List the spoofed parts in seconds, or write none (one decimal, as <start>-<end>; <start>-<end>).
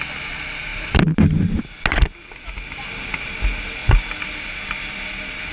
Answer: none